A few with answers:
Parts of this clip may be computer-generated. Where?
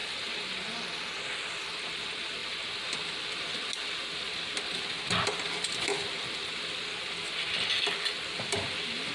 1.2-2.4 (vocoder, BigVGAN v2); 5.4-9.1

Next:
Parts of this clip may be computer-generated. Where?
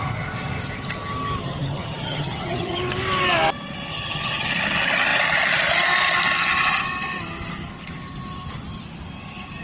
1.4-2.8 (vocoder, HiFi-GAN); 3.9-4.5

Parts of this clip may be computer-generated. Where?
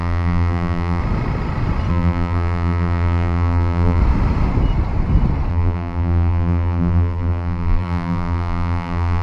0.0-1.0 (vocoder, BigVGAN v2); 1.9-4.0; 5.5-9.2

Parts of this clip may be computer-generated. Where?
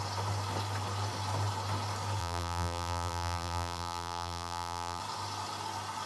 2.2-5.0 (vocoder, BigVGAN v2)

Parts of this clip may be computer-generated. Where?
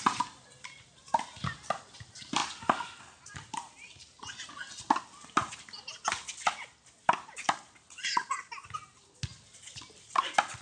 none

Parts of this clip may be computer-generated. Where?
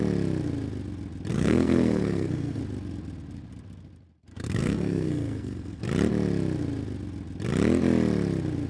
1.3-2.6 (codec, SNAC); 4.3-5.8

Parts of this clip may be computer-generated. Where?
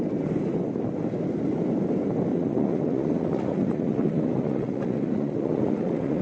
2.3-6.2 (vocoder, Vocos)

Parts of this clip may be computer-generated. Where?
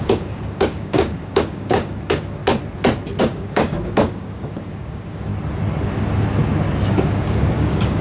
0.0-2.4 (codec, DAC); 3.2-5.3; 6.9-8.0